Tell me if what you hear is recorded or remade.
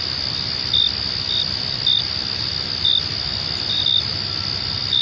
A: recorded